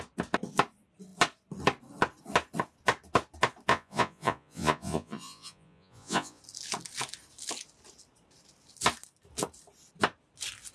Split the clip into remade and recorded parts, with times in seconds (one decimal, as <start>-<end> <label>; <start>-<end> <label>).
0.0-3.7 recorded; 3.7-6.4 remade; 6.4-10.7 recorded